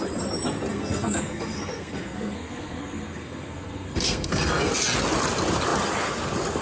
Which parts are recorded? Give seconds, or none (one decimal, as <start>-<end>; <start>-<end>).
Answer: 0.0-0.7; 4.7-6.6